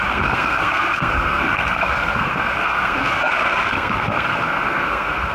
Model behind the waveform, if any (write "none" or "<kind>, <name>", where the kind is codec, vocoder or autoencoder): codec, SNAC